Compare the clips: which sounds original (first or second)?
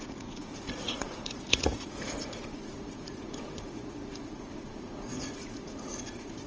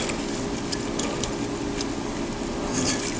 second